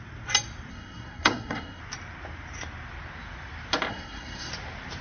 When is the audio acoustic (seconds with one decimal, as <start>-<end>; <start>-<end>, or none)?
0.0-0.7; 1.8-3.9; 4.5-5.0